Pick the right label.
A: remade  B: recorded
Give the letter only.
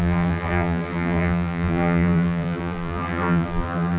A